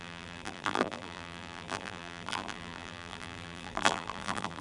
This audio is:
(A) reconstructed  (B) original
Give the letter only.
A